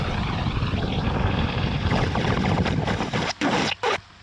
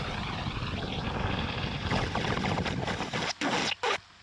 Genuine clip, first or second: second